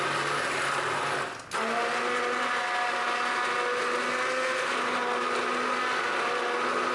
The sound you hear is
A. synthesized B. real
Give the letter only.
B